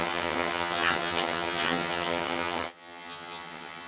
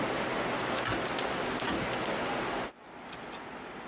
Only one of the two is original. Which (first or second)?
second